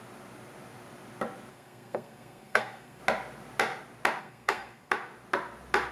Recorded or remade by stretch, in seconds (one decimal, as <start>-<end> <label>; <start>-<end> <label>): 0.0-1.5 recorded; 1.5-3.0 remade; 3.0-4.2 recorded; 4.2-4.9 remade; 4.9-5.9 recorded